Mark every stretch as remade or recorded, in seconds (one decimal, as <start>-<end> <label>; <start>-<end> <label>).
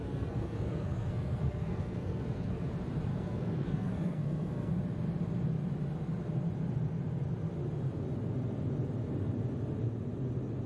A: 0.0-2.7 remade; 2.7-3.1 recorded; 3.1-4.7 remade; 4.7-10.7 recorded